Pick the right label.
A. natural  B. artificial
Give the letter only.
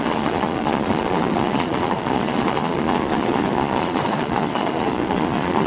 B